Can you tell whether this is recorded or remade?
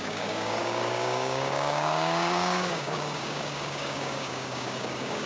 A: remade